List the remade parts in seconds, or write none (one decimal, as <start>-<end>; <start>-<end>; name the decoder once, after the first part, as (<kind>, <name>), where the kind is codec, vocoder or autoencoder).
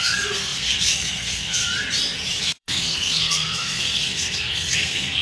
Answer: 0.0-1.6 (codec, SNAC); 2.4-5.2